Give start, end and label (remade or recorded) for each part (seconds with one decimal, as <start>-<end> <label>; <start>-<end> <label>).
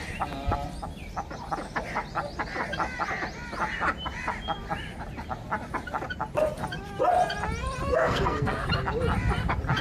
0.0-7.9 recorded; 7.9-8.7 remade; 8.7-9.8 recorded